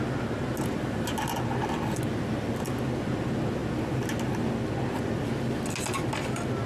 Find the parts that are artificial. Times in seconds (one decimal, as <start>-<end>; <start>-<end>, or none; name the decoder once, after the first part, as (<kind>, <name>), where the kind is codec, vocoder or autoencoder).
none